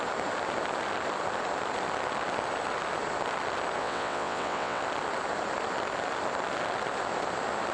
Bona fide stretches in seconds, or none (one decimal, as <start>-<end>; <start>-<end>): 0.0-3.8; 4.8-7.7